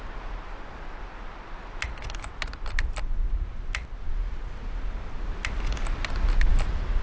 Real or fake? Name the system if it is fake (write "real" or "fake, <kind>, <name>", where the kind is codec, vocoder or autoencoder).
real